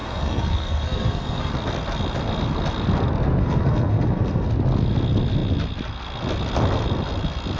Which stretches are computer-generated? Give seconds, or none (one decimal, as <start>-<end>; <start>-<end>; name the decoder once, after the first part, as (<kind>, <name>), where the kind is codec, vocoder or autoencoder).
0.0-1.5 (codec, SNAC); 3.4-4.5